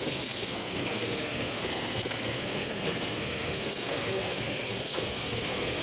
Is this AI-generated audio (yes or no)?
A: yes